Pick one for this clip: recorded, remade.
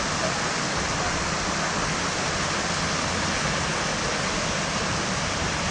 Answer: recorded